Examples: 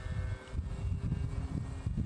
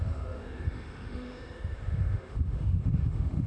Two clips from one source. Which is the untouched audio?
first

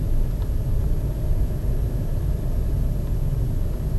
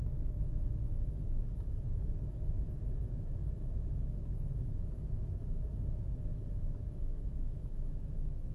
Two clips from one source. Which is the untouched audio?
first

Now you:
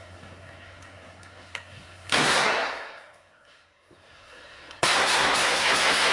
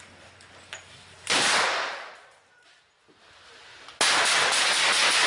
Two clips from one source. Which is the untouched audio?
second